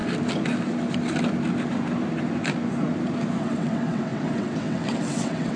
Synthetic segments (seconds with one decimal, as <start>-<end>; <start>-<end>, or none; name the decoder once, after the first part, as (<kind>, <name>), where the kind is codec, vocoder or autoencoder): 3.4-5.6 (vocoder, WaveNeXt)